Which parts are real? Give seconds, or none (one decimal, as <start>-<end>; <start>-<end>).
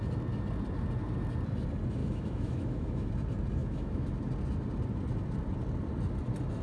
0.0-2.0; 3.1-3.6; 4.1-6.6